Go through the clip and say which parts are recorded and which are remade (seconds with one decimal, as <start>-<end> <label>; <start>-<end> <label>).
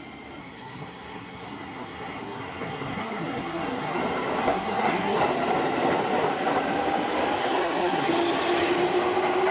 0.0-0.4 recorded; 0.4-4.0 remade; 4.0-4.4 recorded; 4.4-5.2 remade; 5.2-7.4 recorded; 7.4-8.1 remade; 8.1-9.5 recorded